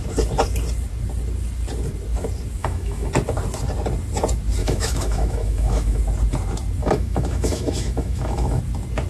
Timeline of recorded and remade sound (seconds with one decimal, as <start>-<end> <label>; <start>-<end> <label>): 0.0-2.6 recorded; 2.6-3.1 remade; 3.1-4.6 recorded; 4.6-6.0 remade; 6.0-6.8 recorded; 6.8-8.6 remade; 8.6-9.1 recorded